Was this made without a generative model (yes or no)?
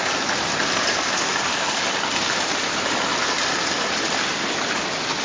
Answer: yes